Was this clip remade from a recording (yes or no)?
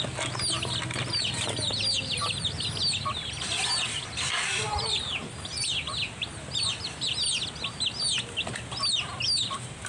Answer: no